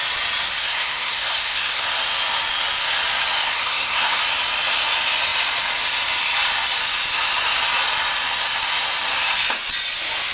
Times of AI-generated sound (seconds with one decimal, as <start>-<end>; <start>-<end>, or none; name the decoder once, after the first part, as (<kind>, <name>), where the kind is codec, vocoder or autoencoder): 0.6-1.8 (codec, SNAC); 3.4-4.2